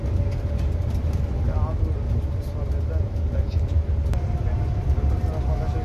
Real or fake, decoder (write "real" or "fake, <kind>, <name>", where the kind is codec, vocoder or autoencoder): real